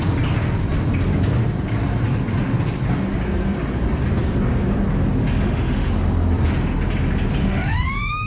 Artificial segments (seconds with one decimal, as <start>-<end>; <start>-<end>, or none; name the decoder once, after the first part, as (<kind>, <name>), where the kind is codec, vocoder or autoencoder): 5.2-5.9 (autoencoder, DAC-VAE); 7.4-8.3